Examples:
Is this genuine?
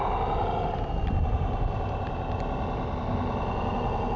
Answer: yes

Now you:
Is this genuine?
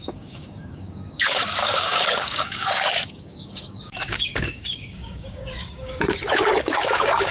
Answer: no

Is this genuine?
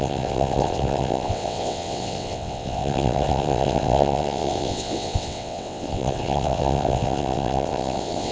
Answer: no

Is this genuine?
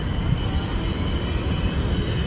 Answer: yes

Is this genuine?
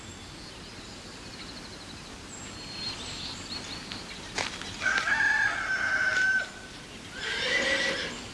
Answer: yes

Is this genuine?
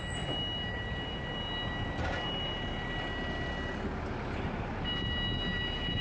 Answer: yes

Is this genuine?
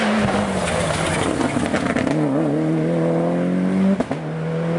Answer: yes